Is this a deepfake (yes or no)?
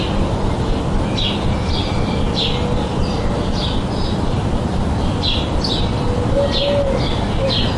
no